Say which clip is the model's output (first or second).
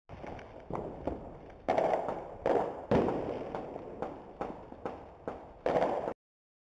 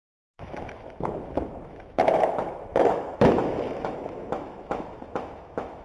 second